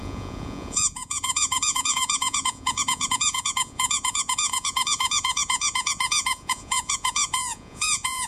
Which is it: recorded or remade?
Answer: remade